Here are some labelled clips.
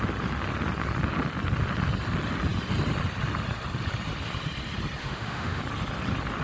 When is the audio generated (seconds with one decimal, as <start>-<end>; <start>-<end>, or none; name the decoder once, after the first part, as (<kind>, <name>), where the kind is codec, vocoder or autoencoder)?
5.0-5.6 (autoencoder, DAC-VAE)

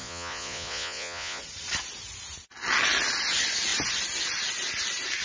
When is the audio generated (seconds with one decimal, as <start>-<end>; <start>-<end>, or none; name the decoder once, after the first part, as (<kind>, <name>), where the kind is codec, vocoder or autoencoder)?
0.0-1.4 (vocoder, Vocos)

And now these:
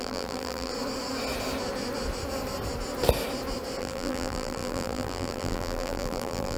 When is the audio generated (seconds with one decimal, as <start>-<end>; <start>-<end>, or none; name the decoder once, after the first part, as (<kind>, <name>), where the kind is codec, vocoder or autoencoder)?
0.0-0.7 (vocoder, BigVGAN v2); 3.8-6.6

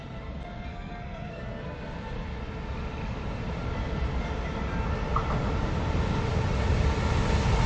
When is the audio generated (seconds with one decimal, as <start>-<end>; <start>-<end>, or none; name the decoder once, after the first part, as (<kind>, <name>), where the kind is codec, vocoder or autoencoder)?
0.7-1.4 (codec, SNAC)